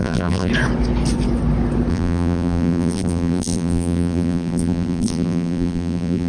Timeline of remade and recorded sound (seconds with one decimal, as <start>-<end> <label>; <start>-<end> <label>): 0.0-0.5 remade; 0.5-1.9 recorded; 1.9-6.3 remade